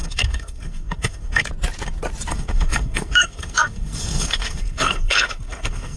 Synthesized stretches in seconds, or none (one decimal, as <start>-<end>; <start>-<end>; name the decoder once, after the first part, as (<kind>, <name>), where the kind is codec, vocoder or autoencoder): 0.0-1.5 (codec, SNAC); 2.3-6.0